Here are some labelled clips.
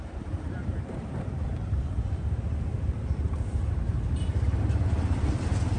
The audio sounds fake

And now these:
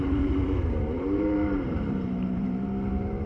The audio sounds fake